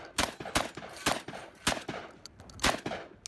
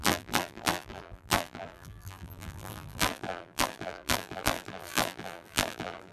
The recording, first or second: first